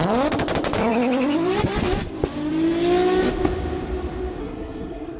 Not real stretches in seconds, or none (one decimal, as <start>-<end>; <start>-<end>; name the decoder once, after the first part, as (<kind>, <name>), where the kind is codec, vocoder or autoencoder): 4.4-5.2 (codec, SNAC)